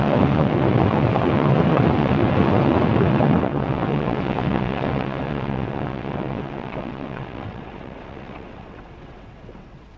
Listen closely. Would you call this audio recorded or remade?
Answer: remade